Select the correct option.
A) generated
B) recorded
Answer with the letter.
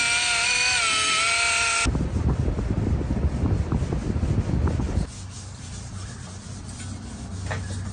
B